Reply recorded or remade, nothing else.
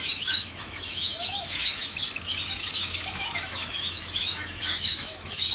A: remade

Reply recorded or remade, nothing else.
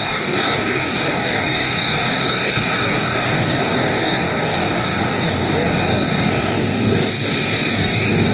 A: remade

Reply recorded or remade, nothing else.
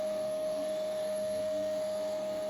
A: remade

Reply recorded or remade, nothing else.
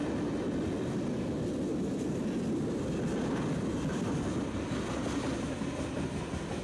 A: recorded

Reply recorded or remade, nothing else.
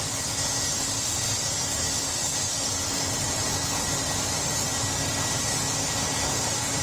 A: remade